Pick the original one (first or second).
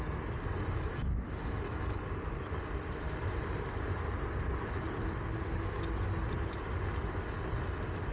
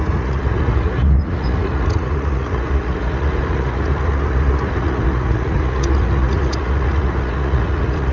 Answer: first